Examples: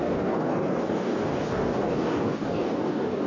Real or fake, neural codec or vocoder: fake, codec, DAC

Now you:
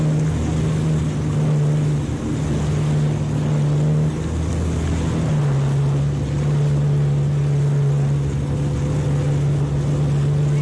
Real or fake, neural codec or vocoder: real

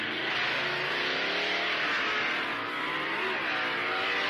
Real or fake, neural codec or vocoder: real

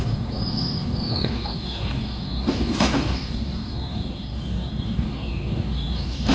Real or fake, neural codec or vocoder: fake, codec, DAC